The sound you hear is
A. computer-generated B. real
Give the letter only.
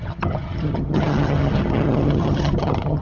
A